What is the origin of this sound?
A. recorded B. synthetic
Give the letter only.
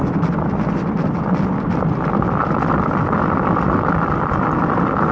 A